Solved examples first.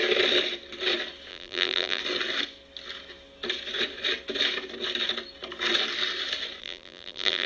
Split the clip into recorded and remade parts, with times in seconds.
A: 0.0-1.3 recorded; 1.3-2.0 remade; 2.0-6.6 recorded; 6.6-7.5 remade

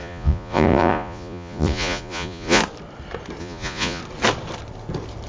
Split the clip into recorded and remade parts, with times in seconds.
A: 0.0-2.6 remade; 2.6-3.4 recorded; 3.4-4.0 remade; 4.0-5.3 recorded

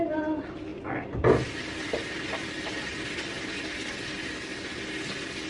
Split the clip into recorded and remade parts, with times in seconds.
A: 0.0-5.5 recorded

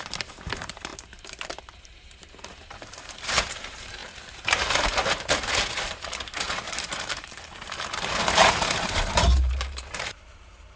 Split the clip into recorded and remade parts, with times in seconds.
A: 0.0-10.8 remade

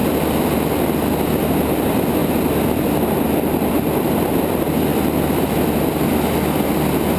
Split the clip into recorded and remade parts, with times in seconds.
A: 0.0-1.4 recorded; 1.4-7.2 remade

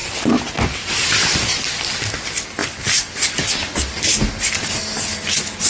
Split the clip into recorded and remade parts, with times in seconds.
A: 0.0-5.7 recorded

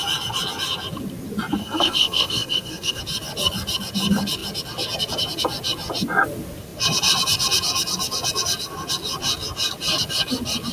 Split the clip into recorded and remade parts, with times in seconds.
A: 0.0-1.6 recorded; 1.6-3.0 remade; 3.0-10.7 recorded